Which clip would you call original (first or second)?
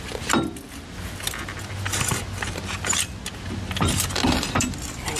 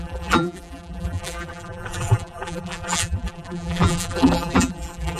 first